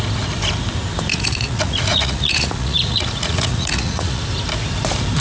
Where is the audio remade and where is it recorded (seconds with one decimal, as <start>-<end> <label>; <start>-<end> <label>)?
0.0-1.1 recorded; 1.1-4.2 remade; 4.2-5.2 recorded